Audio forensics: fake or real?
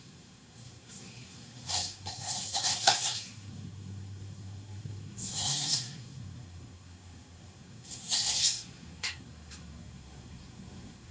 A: fake